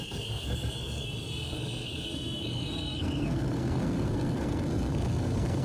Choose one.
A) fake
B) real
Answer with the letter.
A